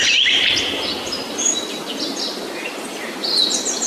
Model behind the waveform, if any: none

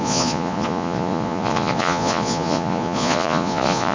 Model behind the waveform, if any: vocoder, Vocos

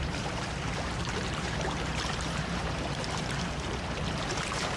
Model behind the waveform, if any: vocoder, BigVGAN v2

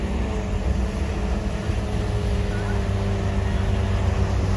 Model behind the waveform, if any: none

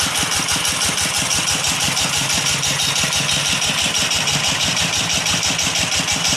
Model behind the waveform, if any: none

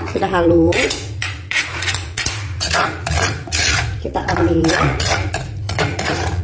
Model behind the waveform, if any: vocoder, Vocos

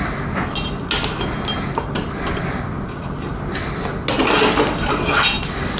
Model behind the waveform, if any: none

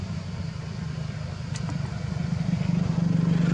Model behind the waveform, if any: none